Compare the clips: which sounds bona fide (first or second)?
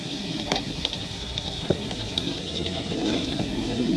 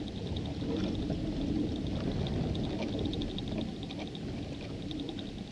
second